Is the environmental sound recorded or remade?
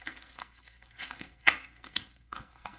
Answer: remade